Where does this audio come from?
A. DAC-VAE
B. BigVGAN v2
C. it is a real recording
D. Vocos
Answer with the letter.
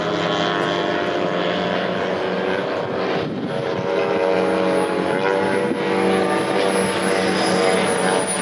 C